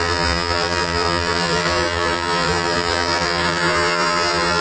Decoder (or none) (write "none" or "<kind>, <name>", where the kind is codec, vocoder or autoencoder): vocoder, BigVGAN v2